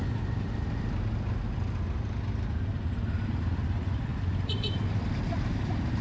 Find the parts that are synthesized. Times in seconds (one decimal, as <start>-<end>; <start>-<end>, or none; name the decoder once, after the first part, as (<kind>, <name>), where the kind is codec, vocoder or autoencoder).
4.1-5.6 (vocoder, BigVGAN v2)